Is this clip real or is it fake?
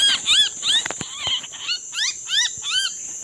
real